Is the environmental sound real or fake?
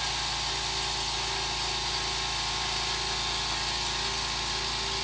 real